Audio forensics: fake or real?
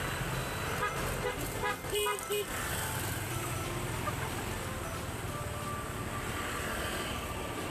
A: real